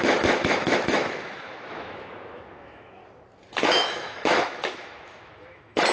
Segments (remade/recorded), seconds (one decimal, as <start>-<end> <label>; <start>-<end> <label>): 0.0-3.0 remade; 3.0-3.6 recorded; 3.6-5.9 remade